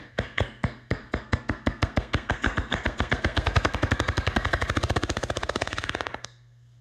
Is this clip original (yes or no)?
no